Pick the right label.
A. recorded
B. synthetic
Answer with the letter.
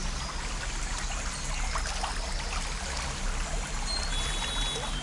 A